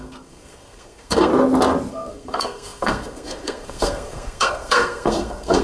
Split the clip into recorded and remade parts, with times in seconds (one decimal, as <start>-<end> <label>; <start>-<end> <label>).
0.0-1.3 remade; 1.3-1.9 recorded; 1.9-5.6 remade